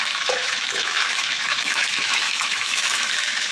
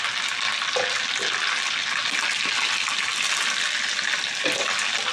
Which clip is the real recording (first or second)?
second